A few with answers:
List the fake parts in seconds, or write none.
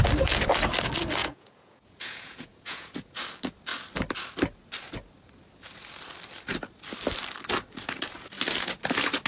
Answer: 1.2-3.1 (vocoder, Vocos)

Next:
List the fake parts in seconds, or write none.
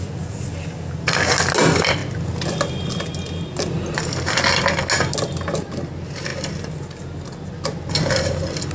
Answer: none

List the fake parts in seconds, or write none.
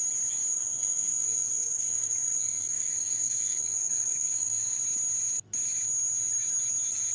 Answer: 0.5-4.8 (codec, SNAC)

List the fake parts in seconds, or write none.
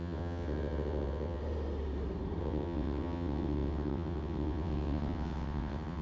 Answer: 0.0-1.4 (vocoder, WaveNeXt); 2.4-6.0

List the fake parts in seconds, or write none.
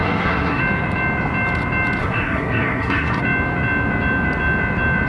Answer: 0.0-0.6 (codec, SNAC); 2.0-3.2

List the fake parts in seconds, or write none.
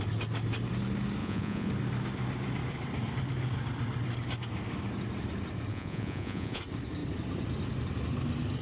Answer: 1.2-1.7 (vocoder, Vocos); 5.7-6.6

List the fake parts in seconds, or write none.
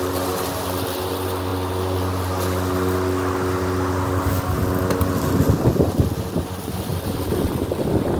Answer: none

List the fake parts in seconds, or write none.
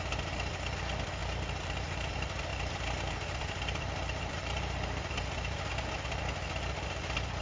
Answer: 1.2-2.1 (vocoder, BigVGAN v2); 2.5-6.2